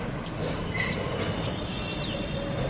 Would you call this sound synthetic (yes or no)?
no